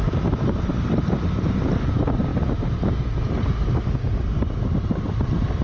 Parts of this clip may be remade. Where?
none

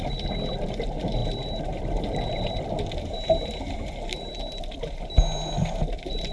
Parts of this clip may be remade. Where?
none

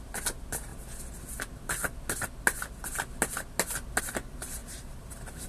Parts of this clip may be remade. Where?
4.6-5.5 (vocoder, BigVGAN v2)

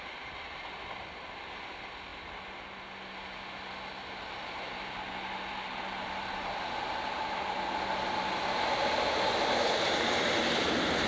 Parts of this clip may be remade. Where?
none

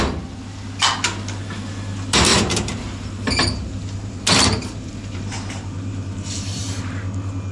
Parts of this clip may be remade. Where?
2.3-6.8 (vocoder, BigVGAN v2)

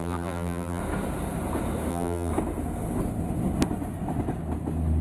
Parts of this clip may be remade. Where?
0.0-0.8 (vocoder, BigVGAN v2); 1.9-2.3

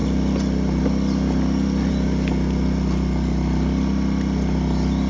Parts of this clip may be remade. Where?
none

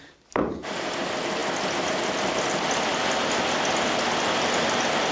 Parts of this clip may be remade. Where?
none